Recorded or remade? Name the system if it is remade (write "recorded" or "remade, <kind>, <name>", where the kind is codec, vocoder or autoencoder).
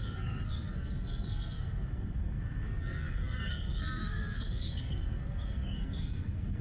remade, codec, SNAC